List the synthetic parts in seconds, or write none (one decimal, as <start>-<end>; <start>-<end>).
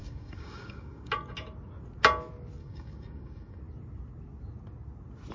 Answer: 0.0-1.1; 2.6-3.6